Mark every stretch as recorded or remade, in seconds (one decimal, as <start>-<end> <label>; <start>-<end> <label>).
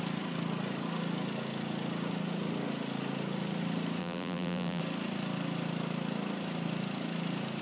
0.0-4.0 recorded; 4.0-4.8 remade; 4.8-7.6 recorded